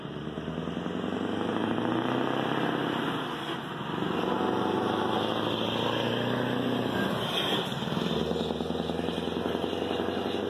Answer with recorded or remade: recorded